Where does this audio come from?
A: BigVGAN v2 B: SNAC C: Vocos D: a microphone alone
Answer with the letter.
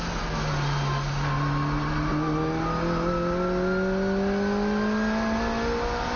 D